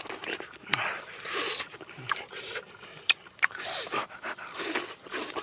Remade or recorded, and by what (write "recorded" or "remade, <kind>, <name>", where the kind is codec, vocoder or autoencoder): recorded